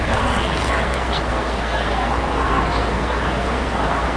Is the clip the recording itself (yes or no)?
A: no